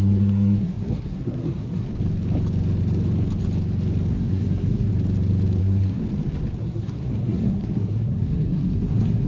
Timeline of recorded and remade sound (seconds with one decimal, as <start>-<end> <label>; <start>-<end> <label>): 0.0-1.9 remade; 1.9-4.1 recorded; 4.1-4.9 remade; 4.9-5.6 recorded; 5.6-6.0 remade; 6.0-6.6 recorded; 6.6-9.3 remade